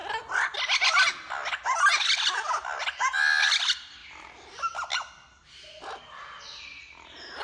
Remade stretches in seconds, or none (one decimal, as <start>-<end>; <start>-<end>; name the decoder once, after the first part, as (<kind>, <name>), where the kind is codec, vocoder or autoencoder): none